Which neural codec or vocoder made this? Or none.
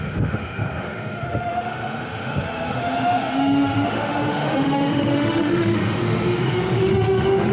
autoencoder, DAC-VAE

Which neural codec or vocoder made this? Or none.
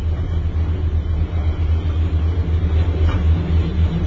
none